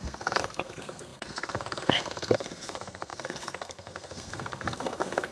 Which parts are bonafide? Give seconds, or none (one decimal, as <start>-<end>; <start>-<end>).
none